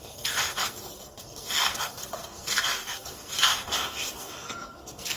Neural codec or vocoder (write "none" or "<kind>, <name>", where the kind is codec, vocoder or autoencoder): codec, SNAC